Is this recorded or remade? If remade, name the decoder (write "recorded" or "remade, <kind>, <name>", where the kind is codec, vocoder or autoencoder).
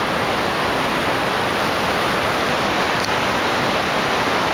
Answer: recorded